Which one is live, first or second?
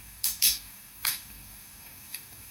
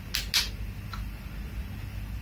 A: second